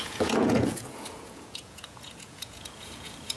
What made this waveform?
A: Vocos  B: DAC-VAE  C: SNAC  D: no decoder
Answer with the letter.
A